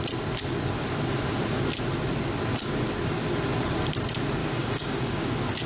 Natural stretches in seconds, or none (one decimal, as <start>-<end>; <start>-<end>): 0.0-4.4; 5.3-5.7